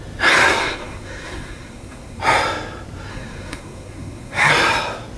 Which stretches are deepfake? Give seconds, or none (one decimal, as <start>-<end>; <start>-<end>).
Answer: 0.6-2.2; 3.1-4.5

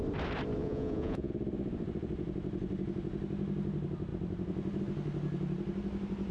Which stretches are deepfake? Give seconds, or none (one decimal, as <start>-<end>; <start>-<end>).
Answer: 0.6-1.3

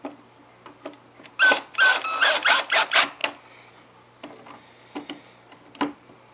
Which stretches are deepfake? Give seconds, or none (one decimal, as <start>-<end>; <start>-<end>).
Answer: none

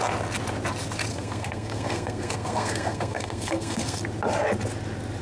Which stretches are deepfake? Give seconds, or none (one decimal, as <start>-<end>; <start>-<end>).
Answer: 1.1-4.0